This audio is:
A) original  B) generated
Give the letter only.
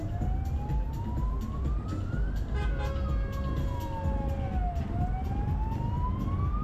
A